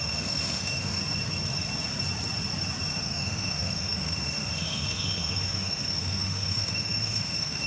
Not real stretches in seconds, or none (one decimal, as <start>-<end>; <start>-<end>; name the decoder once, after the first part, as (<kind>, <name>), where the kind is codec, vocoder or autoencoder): 0.0-1.0 (autoencoder, DAC-VAE); 2.9-7.7